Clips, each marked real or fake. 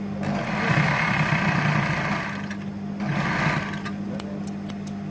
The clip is real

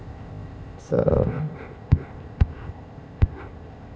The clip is fake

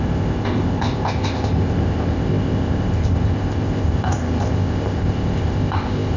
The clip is fake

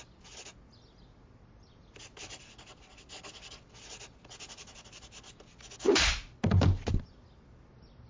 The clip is real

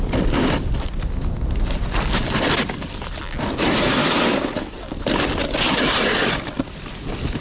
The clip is real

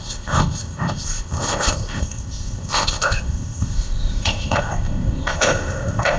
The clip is fake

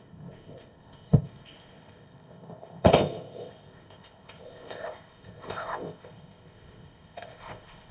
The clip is fake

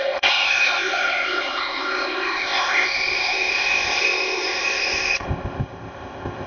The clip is fake